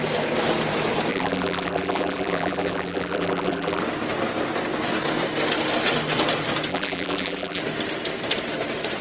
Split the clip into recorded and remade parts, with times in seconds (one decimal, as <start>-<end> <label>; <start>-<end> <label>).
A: 0.0-1.1 recorded; 1.1-3.8 remade; 3.8-6.7 recorded; 6.7-7.6 remade; 7.6-9.0 recorded